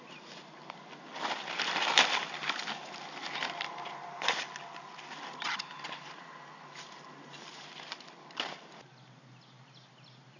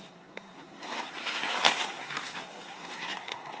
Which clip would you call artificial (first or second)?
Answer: second